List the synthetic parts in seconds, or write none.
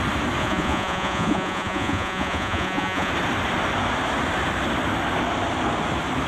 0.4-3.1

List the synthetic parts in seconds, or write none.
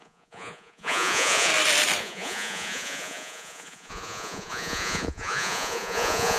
0.0-1.5; 2.0-6.4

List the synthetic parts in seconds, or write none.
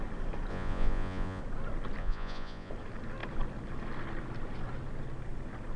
0.5-1.4; 2.0-2.7